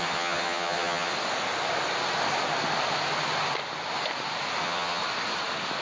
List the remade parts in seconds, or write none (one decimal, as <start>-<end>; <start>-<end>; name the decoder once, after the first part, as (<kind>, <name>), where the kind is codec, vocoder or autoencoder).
0.0-1.1 (vocoder, HiFi-GAN); 4.6-5.0